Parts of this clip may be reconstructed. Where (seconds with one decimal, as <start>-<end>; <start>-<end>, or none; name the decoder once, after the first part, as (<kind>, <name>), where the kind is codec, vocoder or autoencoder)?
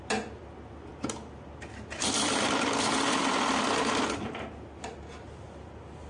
none